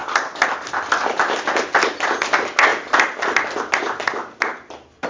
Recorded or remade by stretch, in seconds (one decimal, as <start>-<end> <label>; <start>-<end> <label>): 0.0-5.1 recorded